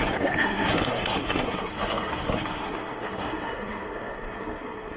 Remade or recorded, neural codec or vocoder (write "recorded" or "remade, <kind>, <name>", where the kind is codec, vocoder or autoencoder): remade, codec, SNAC